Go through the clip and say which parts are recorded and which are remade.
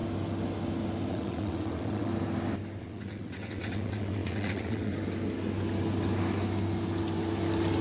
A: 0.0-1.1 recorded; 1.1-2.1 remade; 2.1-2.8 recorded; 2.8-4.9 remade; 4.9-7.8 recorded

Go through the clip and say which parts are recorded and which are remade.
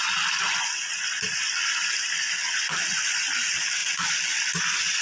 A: 0.0-5.0 recorded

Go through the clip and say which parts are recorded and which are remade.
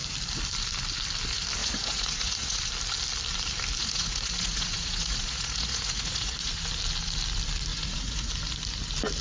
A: 0.0-1.6 recorded; 1.6-2.6 remade; 2.6-3.8 recorded; 3.8-6.5 remade; 6.5-7.7 recorded; 7.7-8.3 remade; 8.3-9.2 recorded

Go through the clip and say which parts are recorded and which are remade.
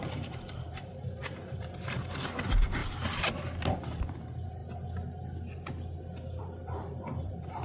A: 0.0-2.8 remade; 2.8-3.6 recorded; 3.6-4.6 remade; 4.6-6.4 recorded; 6.4-7.6 remade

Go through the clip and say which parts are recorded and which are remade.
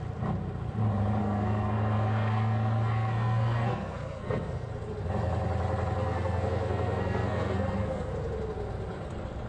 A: 0.0-1.2 recorded; 1.2-4.7 remade; 4.7-6.0 recorded; 6.0-8.1 remade; 8.1-9.5 recorded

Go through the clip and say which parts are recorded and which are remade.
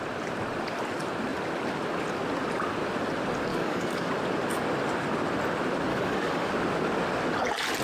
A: 0.0-3.5 recorded; 3.5-4.1 remade; 4.1-5.9 recorded; 5.9-6.5 remade; 6.5-7.8 recorded